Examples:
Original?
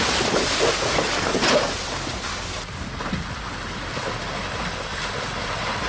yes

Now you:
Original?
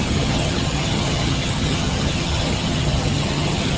no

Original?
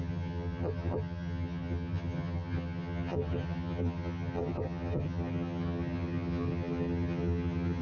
no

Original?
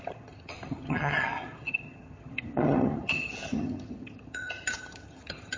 no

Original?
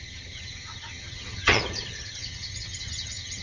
no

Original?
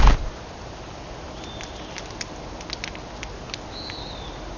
yes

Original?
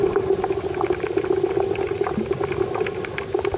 yes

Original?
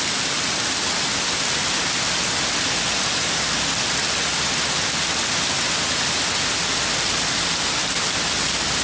yes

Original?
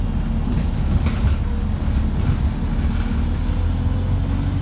yes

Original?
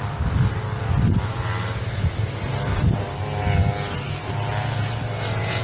yes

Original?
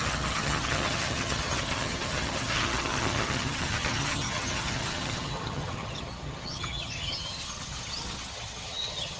no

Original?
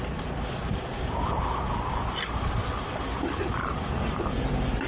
yes